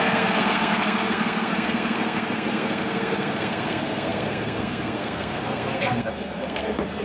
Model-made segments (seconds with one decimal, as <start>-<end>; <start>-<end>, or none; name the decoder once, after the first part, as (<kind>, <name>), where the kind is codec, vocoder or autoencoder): 0.0-7.0 (codec, SNAC)